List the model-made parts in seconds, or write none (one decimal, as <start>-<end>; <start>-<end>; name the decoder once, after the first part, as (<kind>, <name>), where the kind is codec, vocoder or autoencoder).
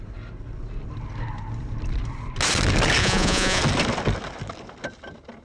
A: 3.0-3.6 (vocoder, Vocos)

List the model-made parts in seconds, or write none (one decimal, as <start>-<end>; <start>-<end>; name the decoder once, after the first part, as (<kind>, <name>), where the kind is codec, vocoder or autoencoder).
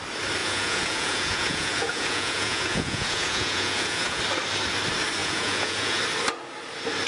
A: 0.4-4.2 (vocoder, Vocos); 5.2-6.0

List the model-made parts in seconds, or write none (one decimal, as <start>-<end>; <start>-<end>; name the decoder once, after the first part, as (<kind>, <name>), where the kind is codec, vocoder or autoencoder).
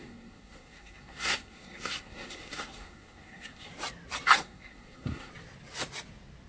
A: 0.0-3.7 (codec, SNAC); 4.4-5.3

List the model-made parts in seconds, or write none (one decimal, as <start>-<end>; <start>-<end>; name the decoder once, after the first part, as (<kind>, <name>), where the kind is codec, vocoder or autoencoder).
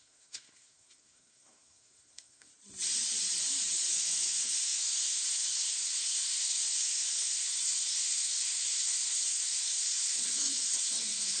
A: 0.0-2.5 (codec, SNAC); 3.9-11.4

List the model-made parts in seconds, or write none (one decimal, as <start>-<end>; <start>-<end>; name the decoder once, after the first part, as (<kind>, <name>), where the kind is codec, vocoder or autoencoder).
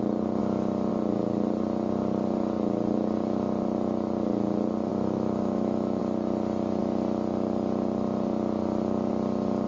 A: 4.9-6.0 (autoencoder, DAC-VAE)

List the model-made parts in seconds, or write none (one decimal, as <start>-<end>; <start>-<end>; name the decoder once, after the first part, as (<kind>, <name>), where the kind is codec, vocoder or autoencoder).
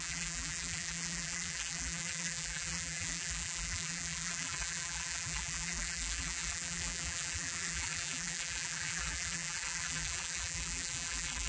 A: 0.0-11.5 (vocoder, BigVGAN v2)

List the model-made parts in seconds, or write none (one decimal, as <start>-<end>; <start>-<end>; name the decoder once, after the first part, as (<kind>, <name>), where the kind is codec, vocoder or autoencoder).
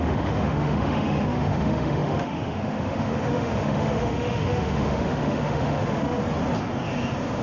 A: 0.0-6.2 (autoencoder, DAC-VAE)